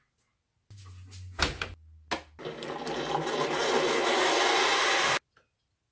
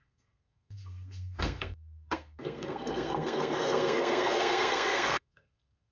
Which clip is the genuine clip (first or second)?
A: first